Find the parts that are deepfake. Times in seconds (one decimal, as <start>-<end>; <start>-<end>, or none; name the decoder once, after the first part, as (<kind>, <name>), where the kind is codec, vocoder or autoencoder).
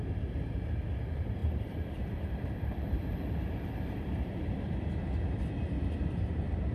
1.4-4.9 (vocoder, BigVGAN v2)